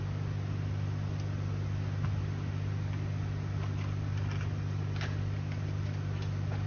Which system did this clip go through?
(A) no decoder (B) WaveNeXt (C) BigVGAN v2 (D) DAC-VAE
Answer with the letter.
A